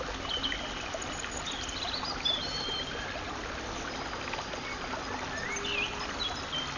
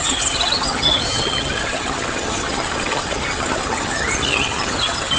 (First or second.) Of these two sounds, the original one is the first